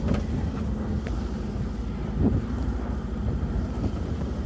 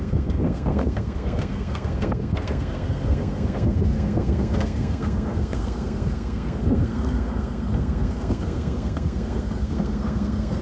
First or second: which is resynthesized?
second